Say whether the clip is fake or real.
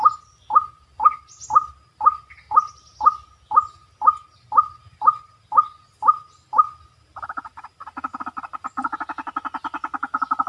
real